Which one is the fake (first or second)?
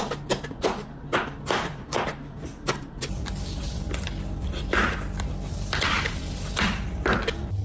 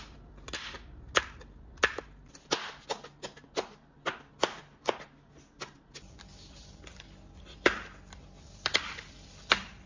first